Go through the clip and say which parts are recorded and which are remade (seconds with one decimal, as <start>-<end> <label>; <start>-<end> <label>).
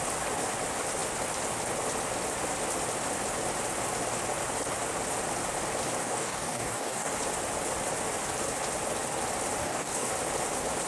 0.0-6.0 recorded; 6.0-7.1 remade; 7.1-9.6 recorded; 9.6-10.1 remade; 10.1-10.9 recorded